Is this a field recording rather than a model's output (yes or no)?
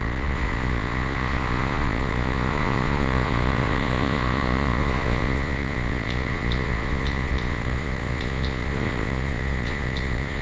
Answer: no